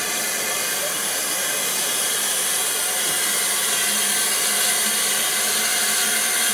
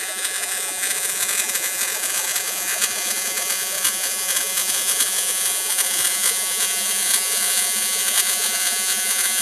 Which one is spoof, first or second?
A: second